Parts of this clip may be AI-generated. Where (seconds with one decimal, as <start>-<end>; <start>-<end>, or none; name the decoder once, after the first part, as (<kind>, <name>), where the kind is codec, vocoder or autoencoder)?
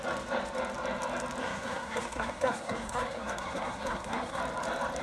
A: 1.4-4.4 (codec, SNAC)